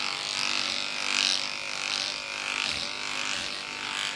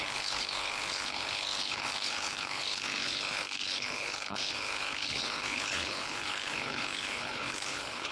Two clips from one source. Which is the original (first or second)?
first